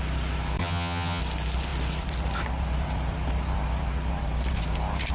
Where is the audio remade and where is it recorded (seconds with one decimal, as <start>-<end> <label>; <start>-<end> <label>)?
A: 0.0-0.6 recorded; 0.6-1.2 remade; 1.2-5.1 recorded